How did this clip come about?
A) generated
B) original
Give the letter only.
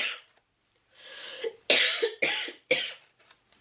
B